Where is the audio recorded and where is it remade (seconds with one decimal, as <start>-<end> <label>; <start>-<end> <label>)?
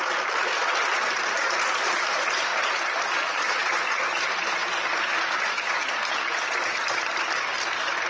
0.0-8.1 recorded